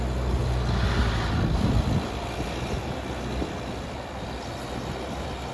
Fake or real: real